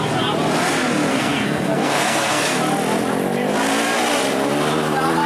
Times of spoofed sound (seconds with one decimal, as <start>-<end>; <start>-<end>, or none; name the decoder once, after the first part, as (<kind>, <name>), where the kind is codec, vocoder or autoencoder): 1.1-2.6 (codec, SNAC)